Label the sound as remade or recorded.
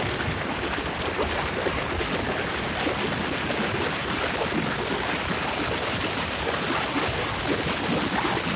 recorded